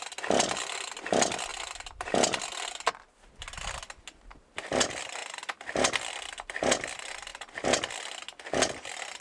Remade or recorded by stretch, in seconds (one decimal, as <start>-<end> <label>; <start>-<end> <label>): 0.0-9.2 recorded